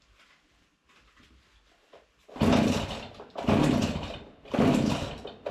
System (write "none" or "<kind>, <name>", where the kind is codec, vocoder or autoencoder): none